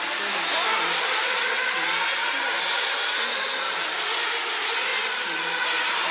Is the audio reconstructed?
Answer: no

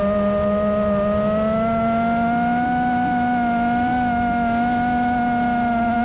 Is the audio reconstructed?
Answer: no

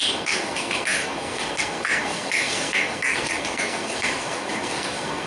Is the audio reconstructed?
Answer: yes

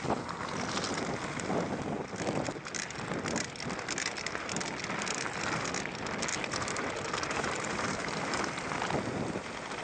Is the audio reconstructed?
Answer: no